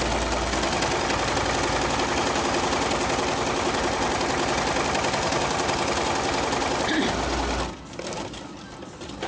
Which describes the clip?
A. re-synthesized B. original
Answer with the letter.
B